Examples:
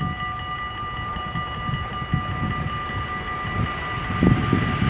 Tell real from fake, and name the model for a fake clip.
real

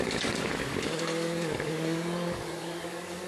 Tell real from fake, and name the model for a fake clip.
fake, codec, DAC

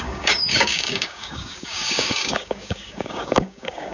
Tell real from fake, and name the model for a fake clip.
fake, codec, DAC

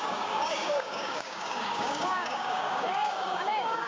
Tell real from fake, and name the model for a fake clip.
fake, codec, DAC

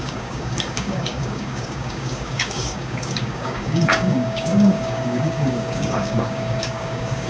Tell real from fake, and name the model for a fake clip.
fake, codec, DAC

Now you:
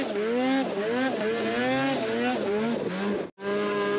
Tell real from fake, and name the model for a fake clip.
real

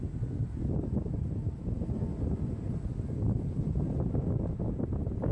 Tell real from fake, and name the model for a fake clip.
real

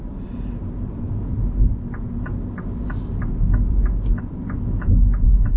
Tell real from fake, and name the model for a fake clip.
real